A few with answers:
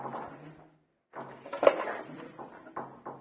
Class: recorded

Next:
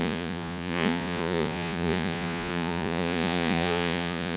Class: remade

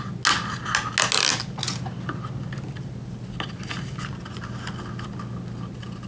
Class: recorded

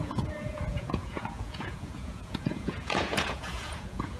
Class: remade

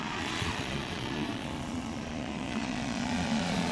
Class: remade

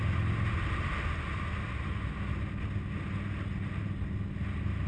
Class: recorded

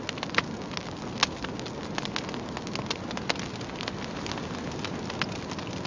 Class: recorded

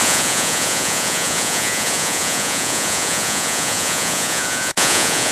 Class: remade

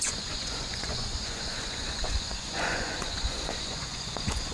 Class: remade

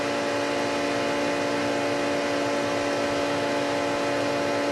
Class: recorded